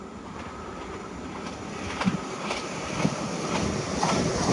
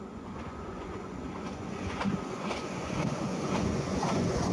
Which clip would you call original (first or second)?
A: first